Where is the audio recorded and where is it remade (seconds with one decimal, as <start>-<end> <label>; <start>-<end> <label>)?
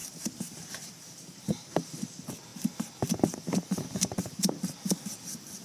0.0-2.1 remade; 2.1-5.6 recorded